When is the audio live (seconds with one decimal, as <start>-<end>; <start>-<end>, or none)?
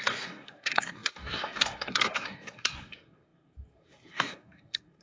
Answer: none